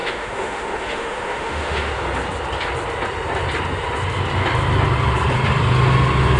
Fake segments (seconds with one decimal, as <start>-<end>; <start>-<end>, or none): 0.0-1.9